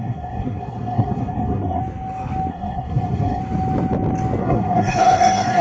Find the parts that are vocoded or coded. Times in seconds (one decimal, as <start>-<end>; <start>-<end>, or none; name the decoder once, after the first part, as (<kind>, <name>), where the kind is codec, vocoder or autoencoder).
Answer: 0.0-1.8 (codec, SNAC); 2.5-3.4; 4.4-5.6